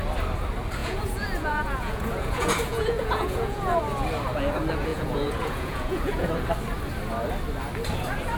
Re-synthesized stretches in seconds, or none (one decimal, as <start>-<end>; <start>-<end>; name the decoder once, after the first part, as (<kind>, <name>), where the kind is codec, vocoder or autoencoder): 0.8-3.8 (vocoder, Vocos); 4.9-6.3